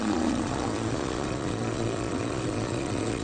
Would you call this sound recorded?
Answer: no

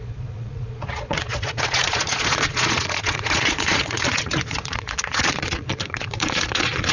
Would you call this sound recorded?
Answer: no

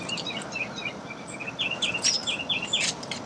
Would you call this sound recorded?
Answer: yes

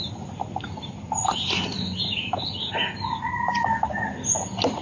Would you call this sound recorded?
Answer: yes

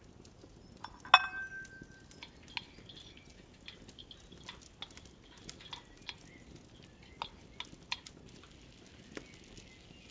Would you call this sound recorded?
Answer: yes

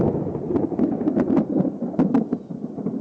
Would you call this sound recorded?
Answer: yes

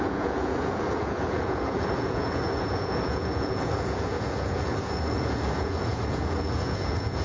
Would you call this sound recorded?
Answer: no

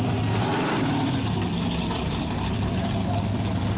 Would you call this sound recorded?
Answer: yes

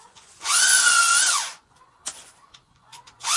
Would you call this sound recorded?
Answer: no